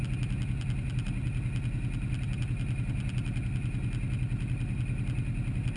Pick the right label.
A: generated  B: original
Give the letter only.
B